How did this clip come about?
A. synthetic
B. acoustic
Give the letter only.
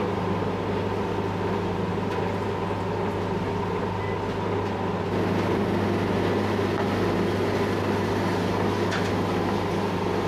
B